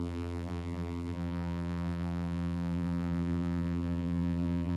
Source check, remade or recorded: remade